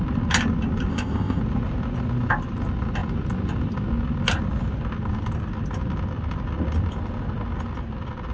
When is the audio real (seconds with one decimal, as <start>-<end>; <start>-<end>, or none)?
0.0-0.9; 1.4-8.3